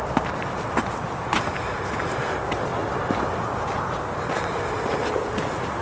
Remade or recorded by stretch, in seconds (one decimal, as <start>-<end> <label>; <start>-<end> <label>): 0.0-5.8 recorded